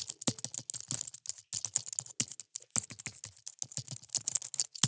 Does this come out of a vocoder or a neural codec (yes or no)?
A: no